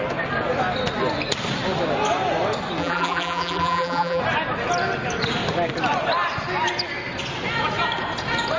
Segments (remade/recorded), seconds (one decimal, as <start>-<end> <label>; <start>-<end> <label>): 0.0-2.8 recorded; 2.8-4.2 remade; 4.2-8.6 recorded